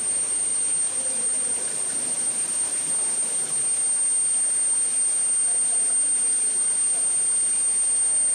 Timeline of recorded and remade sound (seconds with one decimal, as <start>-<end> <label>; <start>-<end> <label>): 0.0-8.3 recorded